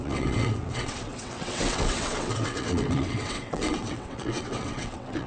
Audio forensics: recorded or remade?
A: remade